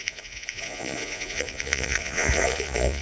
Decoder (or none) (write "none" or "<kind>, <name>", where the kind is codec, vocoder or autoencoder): vocoder, Vocos